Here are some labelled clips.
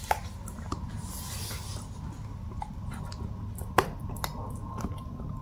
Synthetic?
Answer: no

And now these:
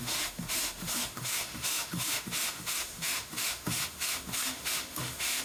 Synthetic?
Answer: yes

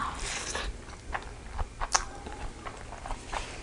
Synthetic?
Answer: no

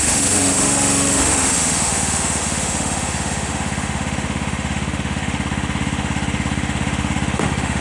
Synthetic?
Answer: yes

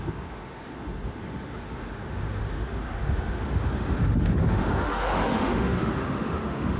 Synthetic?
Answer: yes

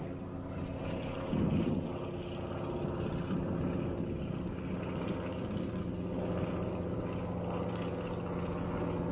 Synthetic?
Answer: no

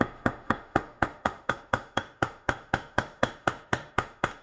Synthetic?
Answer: yes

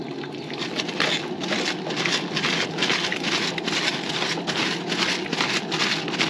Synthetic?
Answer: no